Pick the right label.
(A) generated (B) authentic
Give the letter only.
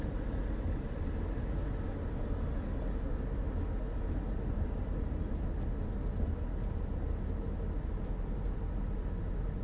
B